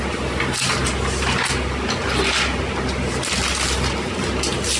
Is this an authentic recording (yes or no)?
yes